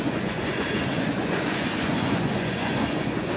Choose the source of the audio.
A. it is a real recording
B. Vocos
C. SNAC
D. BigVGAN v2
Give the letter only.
B